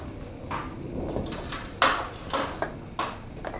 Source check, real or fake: real